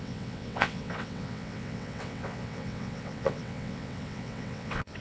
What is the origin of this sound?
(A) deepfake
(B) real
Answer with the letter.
A